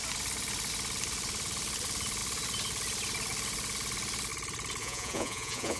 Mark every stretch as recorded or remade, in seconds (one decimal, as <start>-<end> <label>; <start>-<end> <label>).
0.0-4.8 recorded; 4.8-5.8 remade

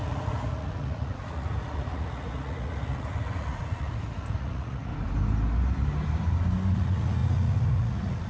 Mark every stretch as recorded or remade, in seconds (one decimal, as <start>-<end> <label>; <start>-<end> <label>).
0.0-4.9 remade; 4.9-6.7 recorded; 6.7-8.3 remade

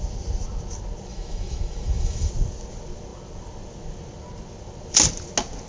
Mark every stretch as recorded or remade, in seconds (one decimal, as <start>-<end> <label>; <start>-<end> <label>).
0.0-1.1 recorded; 1.1-2.3 remade; 2.3-5.7 recorded